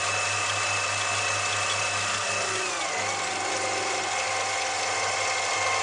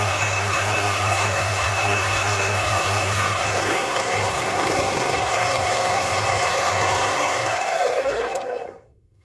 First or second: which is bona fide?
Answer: first